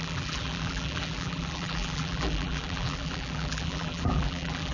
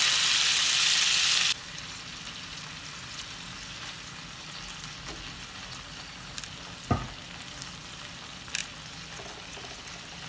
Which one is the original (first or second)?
second